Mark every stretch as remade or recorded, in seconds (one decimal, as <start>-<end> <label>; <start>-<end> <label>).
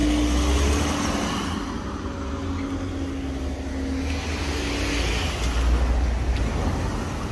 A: 0.0-7.3 recorded